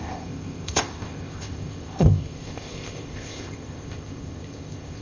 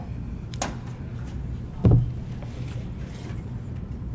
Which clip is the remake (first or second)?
first